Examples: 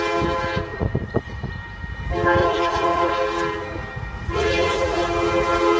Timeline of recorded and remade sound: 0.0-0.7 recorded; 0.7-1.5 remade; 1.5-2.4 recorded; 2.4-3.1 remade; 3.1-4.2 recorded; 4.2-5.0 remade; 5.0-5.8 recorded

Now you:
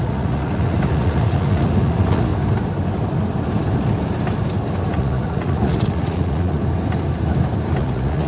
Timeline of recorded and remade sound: 0.0-2.3 remade; 2.3-4.9 recorded; 4.9-6.6 remade; 6.6-7.8 recorded; 7.8-8.3 remade

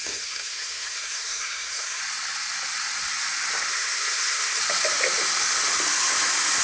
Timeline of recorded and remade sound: 0.0-2.0 remade; 2.0-3.7 recorded; 3.7-4.6 remade; 4.6-6.6 recorded